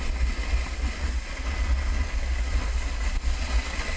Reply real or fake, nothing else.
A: real